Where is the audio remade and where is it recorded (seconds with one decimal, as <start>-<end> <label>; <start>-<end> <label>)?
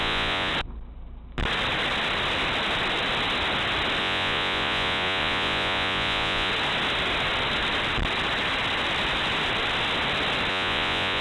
0.0-0.5 remade; 0.5-4.0 recorded; 4.0-6.5 remade; 6.5-10.5 recorded; 10.5-11.2 remade